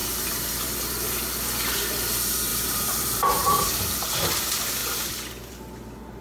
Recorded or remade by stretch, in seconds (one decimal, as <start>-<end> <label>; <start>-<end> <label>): 0.0-0.5 remade; 0.5-2.5 recorded; 2.5-4.1 remade; 4.1-6.2 recorded